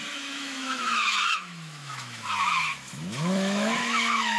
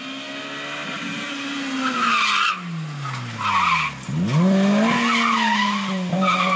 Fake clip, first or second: first